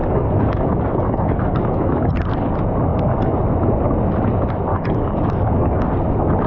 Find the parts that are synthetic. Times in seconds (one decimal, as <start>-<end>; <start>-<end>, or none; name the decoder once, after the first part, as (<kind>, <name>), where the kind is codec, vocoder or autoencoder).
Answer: 0.0-2.1 (codec, DAC); 2.9-3.4; 4.7-5.8